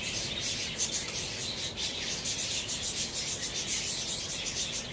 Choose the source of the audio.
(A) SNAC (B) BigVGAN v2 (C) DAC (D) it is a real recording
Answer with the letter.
D